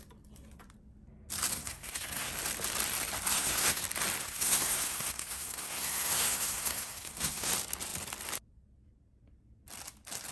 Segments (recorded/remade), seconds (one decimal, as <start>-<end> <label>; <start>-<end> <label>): 0.0-1.5 recorded; 1.5-2.3 remade; 2.3-3.3 recorded; 3.3-3.8 remade; 3.8-4.2 recorded; 4.2-7.5 remade; 7.5-10.3 recorded